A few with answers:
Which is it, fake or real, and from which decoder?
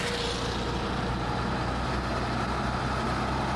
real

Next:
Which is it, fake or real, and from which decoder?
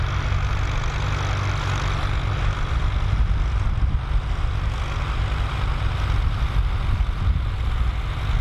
real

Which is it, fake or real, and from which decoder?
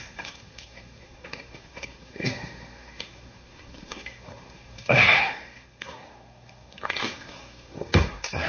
fake, codec, SNAC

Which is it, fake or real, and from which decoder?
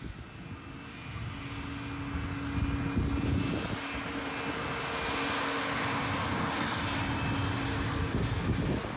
real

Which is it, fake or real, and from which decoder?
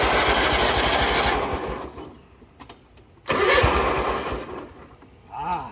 real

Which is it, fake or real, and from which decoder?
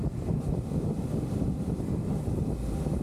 real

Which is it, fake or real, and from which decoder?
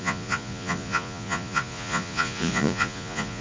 fake, vocoder, Vocos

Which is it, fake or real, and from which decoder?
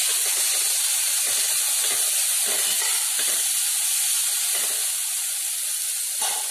real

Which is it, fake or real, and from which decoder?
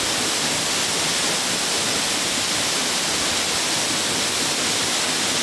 real